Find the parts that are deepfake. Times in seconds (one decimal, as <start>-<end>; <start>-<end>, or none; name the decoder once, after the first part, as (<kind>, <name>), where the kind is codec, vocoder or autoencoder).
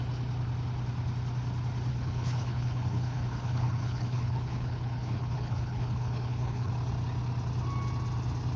1.9-6.7 (codec, HILCodec)